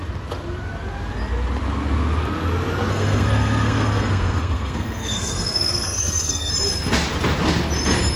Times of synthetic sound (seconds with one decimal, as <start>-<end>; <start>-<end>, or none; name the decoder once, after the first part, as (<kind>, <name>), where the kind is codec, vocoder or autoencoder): 2.9-6.5 (codec, SNAC)